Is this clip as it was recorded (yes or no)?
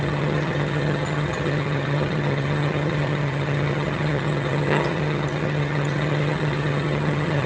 no